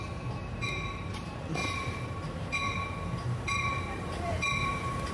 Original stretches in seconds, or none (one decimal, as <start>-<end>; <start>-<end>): 0.0-0.4; 1.1-1.6